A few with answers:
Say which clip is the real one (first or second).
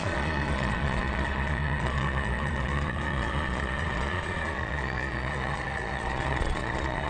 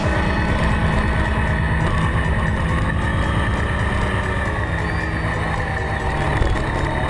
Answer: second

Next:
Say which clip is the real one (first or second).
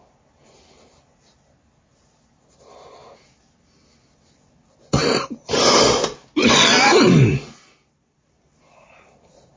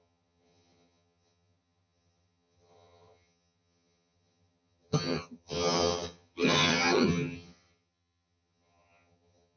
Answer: first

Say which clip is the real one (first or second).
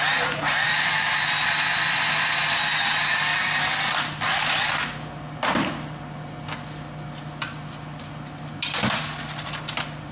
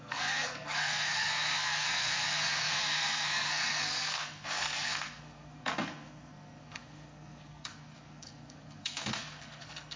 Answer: first